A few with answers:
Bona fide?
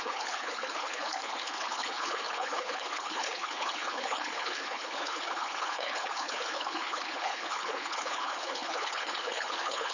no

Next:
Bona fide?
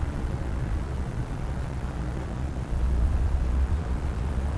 no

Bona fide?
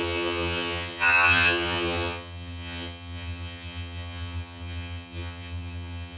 no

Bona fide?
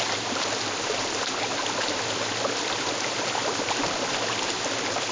yes